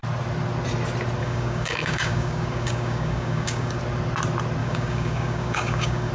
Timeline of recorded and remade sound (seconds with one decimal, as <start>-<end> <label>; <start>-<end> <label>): 0.0-1.2 recorded; 1.2-3.8 remade; 3.8-4.6 recorded; 4.6-6.1 remade